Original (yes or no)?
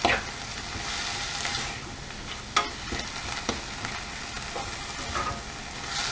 yes